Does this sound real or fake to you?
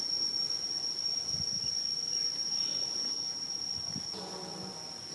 real